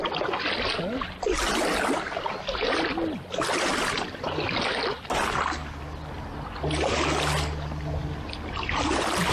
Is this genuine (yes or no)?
yes